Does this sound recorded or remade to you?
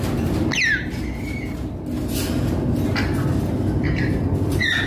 recorded